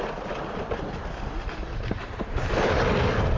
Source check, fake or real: real